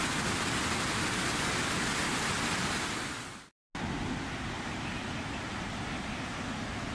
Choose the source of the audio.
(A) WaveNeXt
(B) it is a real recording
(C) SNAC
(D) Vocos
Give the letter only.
B